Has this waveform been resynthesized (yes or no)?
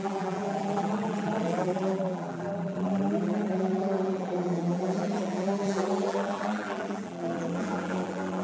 yes